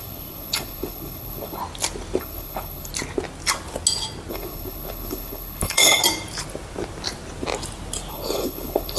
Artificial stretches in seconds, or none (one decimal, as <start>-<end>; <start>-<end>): 0.0-1.6; 2.2-2.9; 4.3-6.0; 8.1-9.0